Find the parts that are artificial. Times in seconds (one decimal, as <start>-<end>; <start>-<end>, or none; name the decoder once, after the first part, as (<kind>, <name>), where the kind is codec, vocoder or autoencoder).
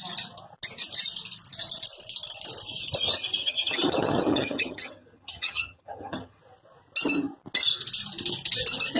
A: 3.4-6.4 (vocoder, HiFi-GAN)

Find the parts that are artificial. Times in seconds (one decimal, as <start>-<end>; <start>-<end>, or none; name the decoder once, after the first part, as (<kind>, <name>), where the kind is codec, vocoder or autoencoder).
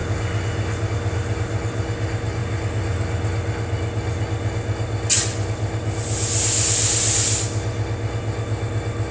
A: none